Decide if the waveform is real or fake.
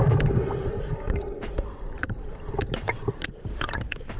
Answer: fake